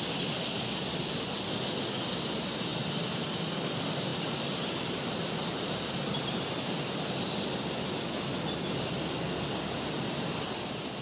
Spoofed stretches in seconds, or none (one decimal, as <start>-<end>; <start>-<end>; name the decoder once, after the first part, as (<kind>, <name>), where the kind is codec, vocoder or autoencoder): 4.1-6.2 (vocoder, BigVGAN v2)